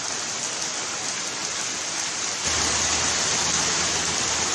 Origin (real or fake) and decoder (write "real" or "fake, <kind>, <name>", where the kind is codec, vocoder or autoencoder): real